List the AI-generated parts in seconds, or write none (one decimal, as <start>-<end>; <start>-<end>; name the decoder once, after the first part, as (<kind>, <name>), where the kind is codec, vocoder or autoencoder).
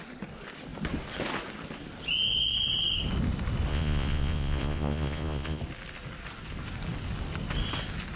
3.7-5.6 (vocoder, Vocos)